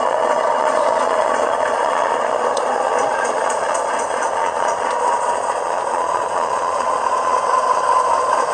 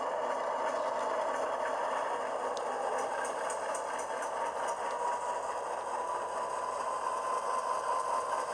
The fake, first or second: first